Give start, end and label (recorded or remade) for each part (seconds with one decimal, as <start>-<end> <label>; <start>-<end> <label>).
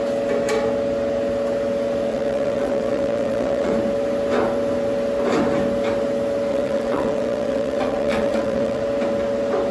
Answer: 0.0-2.1 recorded; 2.1-3.7 remade; 3.7-6.5 recorded; 6.5-8.8 remade; 8.8-9.7 recorded